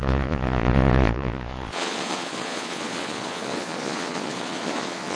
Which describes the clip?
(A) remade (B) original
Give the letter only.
A